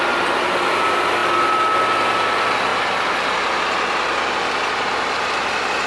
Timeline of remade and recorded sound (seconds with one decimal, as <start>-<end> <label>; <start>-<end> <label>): 0.0-5.9 recorded